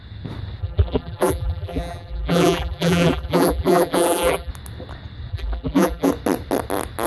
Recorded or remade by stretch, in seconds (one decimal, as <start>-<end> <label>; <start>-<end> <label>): 0.0-0.6 recorded; 0.6-4.5 remade; 4.5-5.3 recorded; 5.3-6.1 remade; 6.1-7.1 recorded